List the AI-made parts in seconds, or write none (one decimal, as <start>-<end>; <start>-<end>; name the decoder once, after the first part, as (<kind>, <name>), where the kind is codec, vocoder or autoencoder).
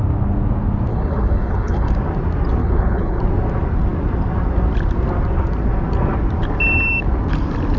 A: 0.9-1.9 (codec, HILCodec); 2.6-3.2